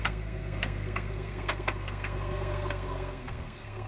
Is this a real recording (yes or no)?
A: no